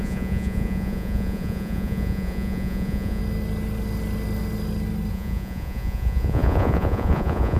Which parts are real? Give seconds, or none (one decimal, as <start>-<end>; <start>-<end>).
3.2-5.1